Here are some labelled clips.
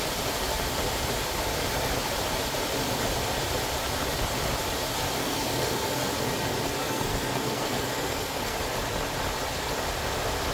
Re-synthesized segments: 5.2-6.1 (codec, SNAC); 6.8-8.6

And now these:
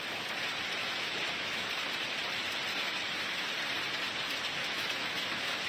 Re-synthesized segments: 0.8-1.7 (autoencoder, DAC-VAE); 2.7-3.5; 4.6-5.7